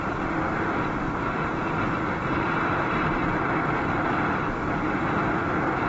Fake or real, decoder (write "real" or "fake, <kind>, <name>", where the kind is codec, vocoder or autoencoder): fake, vocoder, BigVGAN v2